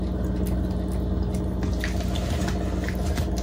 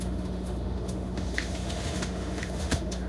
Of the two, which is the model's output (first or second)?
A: second